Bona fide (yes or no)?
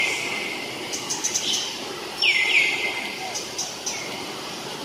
yes